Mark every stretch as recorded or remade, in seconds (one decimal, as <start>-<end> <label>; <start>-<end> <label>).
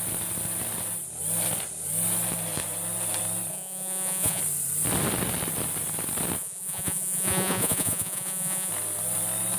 0.0-3.5 recorded; 3.5-4.4 remade; 4.4-6.4 recorded; 6.4-8.7 remade; 8.7-9.6 recorded